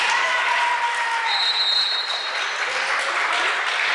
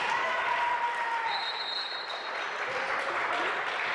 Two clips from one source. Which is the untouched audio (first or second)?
first